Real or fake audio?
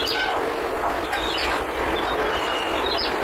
real